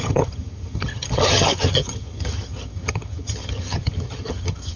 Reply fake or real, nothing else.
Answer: fake